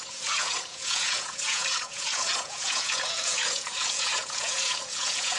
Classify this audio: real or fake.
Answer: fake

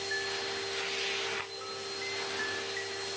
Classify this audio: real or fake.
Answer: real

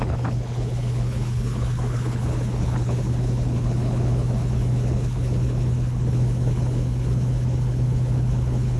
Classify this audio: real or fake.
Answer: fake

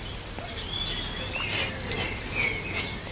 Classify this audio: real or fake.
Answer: real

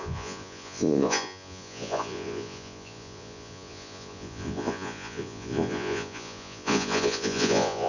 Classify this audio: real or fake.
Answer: fake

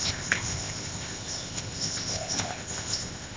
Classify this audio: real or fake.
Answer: fake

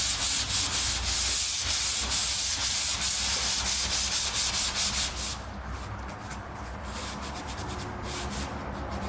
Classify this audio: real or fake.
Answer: real